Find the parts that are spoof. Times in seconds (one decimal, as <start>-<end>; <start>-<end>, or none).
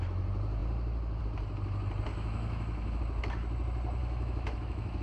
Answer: 2.1-3.0; 4.0-5.0